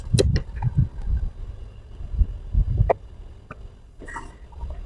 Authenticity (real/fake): real